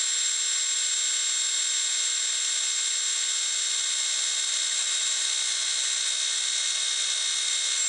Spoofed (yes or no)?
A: no